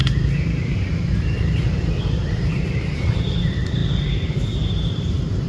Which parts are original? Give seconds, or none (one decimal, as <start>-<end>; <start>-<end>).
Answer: none